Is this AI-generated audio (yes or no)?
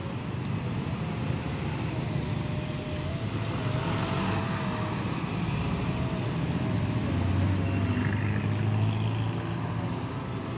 no